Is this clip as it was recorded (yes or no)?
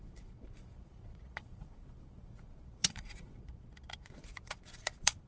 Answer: no